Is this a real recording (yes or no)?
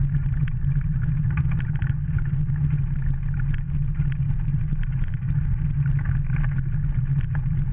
yes